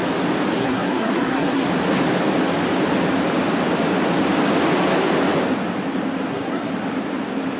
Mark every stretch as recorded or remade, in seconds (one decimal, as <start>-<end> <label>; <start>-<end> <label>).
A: 0.0-0.6 recorded; 0.6-1.7 remade; 1.7-6.3 recorded; 6.3-6.7 remade; 6.7-7.6 recorded